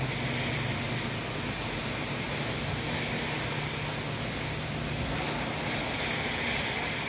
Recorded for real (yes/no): yes